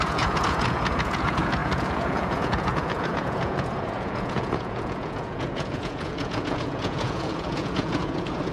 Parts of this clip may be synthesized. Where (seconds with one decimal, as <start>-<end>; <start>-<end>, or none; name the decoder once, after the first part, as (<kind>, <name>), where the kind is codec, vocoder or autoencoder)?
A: 0.0-8.5 (vocoder, Vocos)